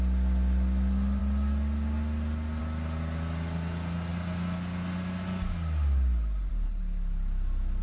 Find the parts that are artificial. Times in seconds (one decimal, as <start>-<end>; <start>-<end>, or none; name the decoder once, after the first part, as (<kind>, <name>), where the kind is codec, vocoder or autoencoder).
none